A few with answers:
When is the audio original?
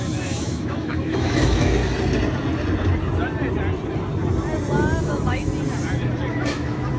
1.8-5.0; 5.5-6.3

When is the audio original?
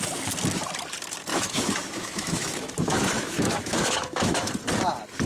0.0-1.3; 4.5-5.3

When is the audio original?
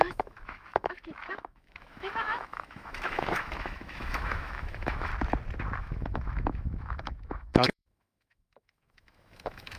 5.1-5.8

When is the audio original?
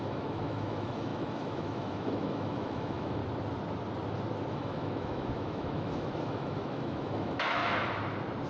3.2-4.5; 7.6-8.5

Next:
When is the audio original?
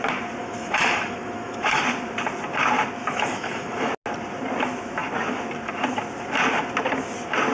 0.0-0.4; 1.8-3.0; 3.9-7.5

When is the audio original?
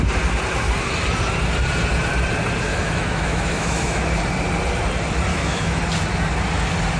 0.0-2.7; 4.1-5.3; 5.8-7.0